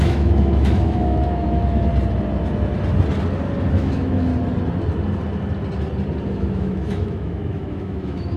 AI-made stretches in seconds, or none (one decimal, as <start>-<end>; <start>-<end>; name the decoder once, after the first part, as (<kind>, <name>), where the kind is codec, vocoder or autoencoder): 0.0-1.9 (autoencoder, DAC-VAE); 3.7-4.3; 6.3-8.4